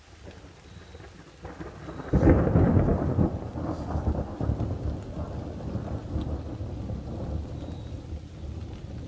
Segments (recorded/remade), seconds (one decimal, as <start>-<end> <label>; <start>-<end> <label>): 0.0-9.1 recorded